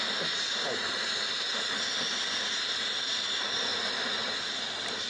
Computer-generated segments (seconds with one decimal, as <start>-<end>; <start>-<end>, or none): 3.7-5.1